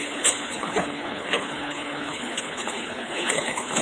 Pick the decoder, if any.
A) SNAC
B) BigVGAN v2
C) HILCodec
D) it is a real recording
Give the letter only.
C